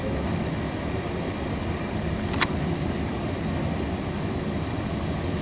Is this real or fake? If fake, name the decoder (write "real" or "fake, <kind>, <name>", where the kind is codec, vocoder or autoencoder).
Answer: real